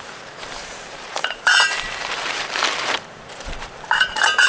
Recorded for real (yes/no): no